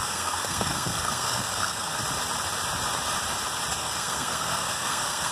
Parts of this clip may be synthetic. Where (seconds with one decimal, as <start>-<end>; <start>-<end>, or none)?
0.0-2.0; 3.8-5.3